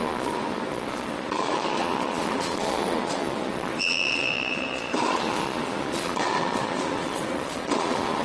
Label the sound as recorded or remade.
remade